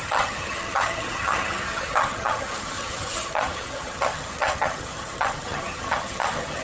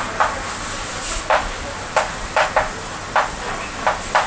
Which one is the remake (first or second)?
first